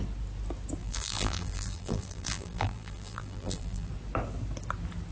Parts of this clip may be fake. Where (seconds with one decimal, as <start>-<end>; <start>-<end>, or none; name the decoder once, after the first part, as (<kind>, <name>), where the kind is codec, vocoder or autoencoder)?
0.8-3.9 (vocoder, BigVGAN v2)